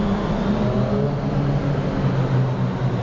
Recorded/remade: recorded